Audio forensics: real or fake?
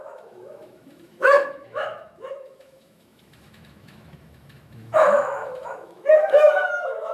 fake